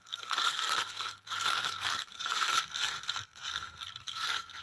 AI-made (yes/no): yes